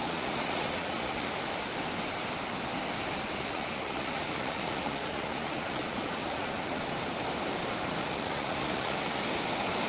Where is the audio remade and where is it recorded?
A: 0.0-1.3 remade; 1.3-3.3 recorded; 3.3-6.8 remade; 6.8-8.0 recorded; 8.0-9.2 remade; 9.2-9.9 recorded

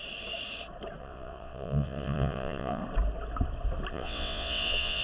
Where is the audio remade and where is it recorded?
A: 0.0-1.0 recorded; 1.0-2.8 remade; 2.8-3.9 recorded; 3.9-5.0 remade

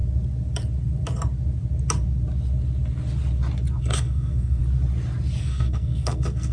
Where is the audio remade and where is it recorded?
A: 0.0-3.8 recorded; 3.8-4.6 remade; 4.6-5.4 recorded; 5.4-6.5 remade

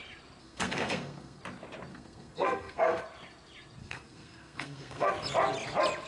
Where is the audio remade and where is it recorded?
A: 0.0-0.4 recorded; 0.4-1.4 remade; 1.4-1.9 recorded; 1.9-3.0 remade; 3.0-3.8 recorded; 3.8-5.1 remade; 5.1-6.1 recorded

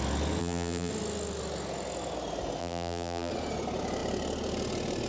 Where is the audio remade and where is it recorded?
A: 0.0-0.4 recorded; 0.4-0.9 remade; 0.9-2.6 recorded; 2.6-3.3 remade; 3.3-5.1 recorded

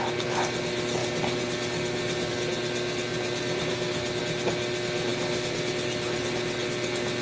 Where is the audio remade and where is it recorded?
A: 0.0-7.2 recorded

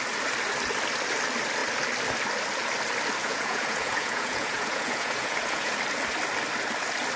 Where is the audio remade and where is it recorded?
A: 0.0-3.2 recorded; 3.2-5.7 remade; 5.7-7.2 recorded

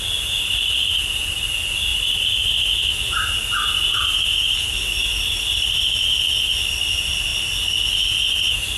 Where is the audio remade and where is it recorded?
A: 0.0-8.8 recorded